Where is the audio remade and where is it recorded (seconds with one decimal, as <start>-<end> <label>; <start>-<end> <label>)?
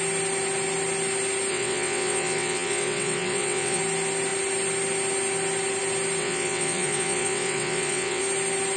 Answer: 0.0-1.5 recorded; 1.5-3.8 remade; 3.8-6.2 recorded; 6.2-8.2 remade; 8.2-8.8 recorded